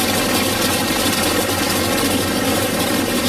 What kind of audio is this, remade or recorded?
recorded